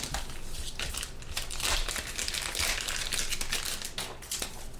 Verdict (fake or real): real